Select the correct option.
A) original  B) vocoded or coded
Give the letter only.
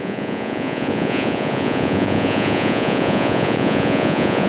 B